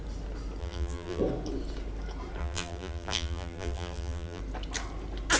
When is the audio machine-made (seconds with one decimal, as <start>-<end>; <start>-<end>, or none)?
0.6-1.2; 2.4-4.4